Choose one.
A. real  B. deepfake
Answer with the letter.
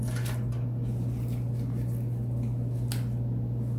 A